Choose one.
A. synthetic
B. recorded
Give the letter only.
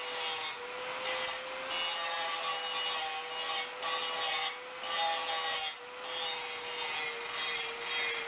B